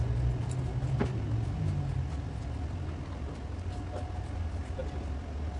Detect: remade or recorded recorded